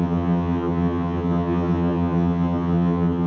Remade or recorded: remade